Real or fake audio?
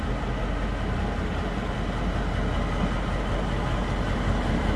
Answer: real